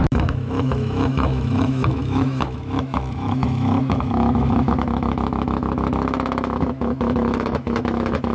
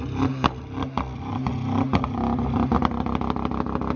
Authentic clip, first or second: second